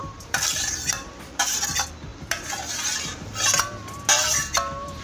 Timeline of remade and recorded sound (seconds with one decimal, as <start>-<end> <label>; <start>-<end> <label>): 0.0-1.4 remade; 1.4-5.0 recorded